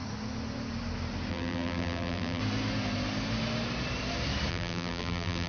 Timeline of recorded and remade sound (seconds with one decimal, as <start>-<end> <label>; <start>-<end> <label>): 0.0-1.3 recorded; 1.3-2.4 remade; 2.4-4.5 recorded; 4.5-5.5 remade